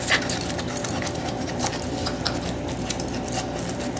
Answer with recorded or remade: recorded